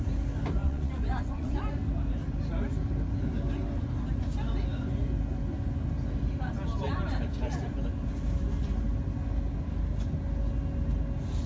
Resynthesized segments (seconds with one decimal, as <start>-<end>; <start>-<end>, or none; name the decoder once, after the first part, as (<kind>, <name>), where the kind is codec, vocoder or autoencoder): 0.6-1.7 (vocoder, Vocos)